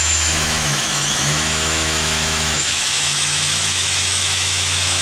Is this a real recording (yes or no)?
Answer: no